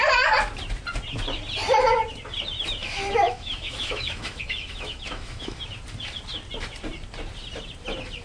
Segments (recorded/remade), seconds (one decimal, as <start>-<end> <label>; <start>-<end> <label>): 0.0-2.8 recorded; 2.8-5.6 remade; 5.6-8.2 recorded